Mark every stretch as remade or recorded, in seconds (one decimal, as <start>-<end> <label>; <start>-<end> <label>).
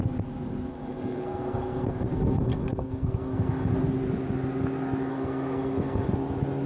0.0-0.7 recorded; 0.7-3.7 remade; 3.7-5.1 recorded; 5.1-6.1 remade; 6.1-6.7 recorded